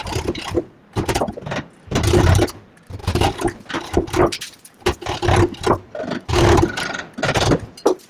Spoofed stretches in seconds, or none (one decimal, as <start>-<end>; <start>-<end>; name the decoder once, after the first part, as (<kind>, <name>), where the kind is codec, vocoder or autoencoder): none